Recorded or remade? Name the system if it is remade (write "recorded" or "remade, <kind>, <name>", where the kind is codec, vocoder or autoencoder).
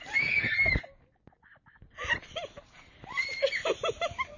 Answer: recorded